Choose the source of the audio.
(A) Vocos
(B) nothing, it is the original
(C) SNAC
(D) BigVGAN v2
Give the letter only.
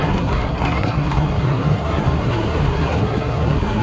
C